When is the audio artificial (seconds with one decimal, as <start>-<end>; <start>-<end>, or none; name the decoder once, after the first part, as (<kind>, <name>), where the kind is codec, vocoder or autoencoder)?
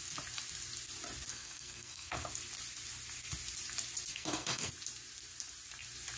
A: 1.3-2.3 (codec, SNAC); 4.1-4.7